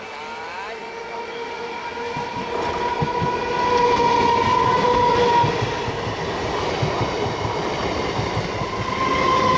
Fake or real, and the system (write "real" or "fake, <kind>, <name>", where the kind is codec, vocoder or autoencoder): real